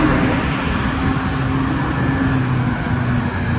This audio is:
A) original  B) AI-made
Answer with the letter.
A